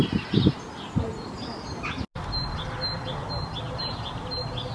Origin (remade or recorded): recorded